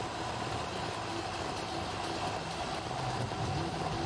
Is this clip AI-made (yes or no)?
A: no